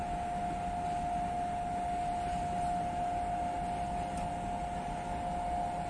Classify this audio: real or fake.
real